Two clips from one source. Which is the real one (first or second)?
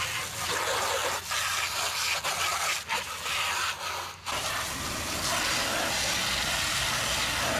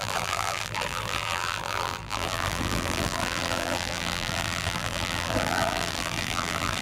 first